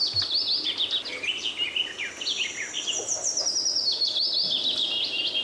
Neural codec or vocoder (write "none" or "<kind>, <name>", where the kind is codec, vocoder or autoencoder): none